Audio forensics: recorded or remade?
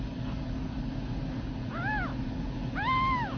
recorded